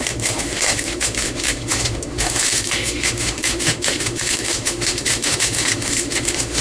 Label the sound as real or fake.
fake